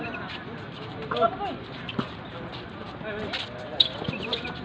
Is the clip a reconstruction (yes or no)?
no